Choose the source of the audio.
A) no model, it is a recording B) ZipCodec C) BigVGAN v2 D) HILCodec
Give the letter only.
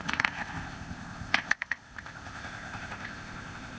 B